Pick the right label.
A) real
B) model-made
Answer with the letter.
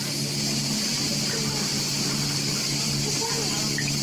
A